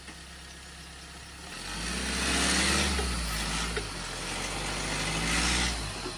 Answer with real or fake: real